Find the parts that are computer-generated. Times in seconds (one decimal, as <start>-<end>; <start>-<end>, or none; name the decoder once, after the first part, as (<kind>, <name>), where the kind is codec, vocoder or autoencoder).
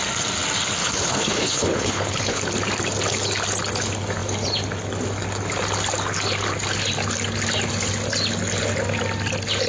0.8-2.4 (codec, HILCodec)